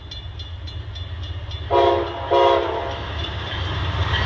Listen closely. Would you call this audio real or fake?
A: real